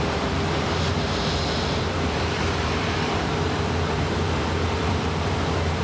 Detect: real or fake fake